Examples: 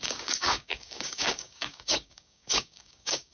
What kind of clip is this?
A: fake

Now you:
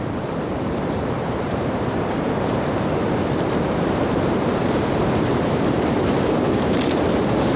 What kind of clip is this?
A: fake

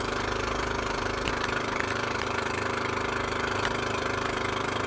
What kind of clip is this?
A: fake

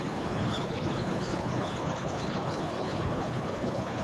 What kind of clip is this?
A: fake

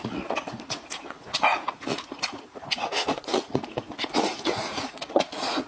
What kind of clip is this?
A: fake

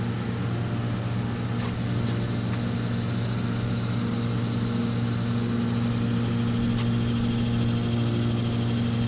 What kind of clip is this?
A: real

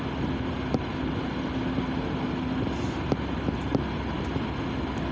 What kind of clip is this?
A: real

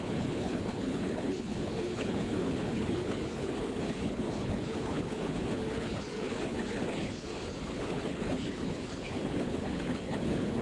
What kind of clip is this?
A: fake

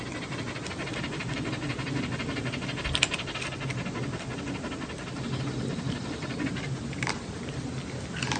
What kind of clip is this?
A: real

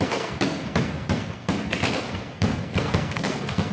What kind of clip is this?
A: fake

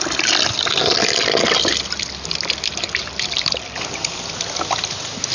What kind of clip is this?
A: real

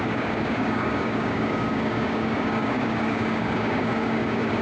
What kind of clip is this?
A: fake